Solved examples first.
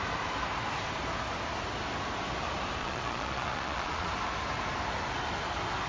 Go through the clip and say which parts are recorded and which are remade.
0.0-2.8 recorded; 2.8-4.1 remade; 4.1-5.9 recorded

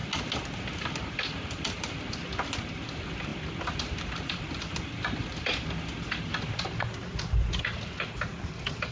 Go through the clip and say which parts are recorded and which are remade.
0.0-0.9 recorded; 0.9-2.3 remade; 2.3-2.8 recorded; 2.8-8.9 remade

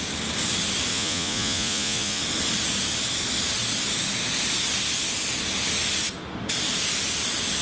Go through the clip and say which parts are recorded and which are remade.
0.0-0.9 recorded; 0.9-2.2 remade; 2.2-7.6 recorded

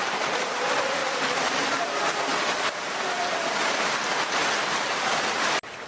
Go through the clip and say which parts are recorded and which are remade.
0.0-5.9 recorded

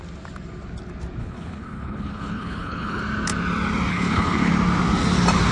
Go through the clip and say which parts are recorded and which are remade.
0.0-1.2 recorded; 1.2-3.0 remade; 3.0-3.9 recorded; 3.9-4.5 remade; 4.5-5.5 recorded

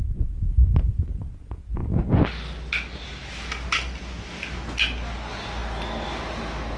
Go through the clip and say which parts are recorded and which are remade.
0.0-6.8 recorded